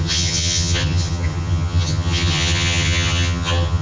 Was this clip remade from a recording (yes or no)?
yes